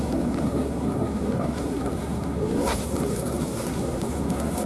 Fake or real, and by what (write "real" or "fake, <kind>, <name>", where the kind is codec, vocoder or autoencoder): fake, codec, SNAC